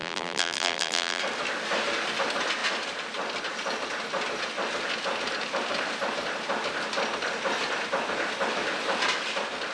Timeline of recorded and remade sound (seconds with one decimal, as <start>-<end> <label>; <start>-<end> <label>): 0.0-1.2 remade; 1.2-9.7 recorded